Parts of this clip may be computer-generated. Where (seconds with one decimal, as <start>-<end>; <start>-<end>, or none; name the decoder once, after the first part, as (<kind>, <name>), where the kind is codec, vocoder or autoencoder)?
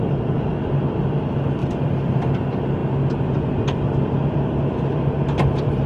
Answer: 0.0-2.8 (vocoder, BigVGAN v2); 3.6-5.9